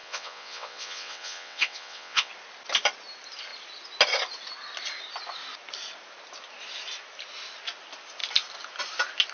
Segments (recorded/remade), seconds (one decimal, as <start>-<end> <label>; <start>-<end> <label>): 0.0-2.3 remade; 2.3-9.3 recorded